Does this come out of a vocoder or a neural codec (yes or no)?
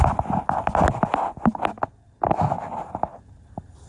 no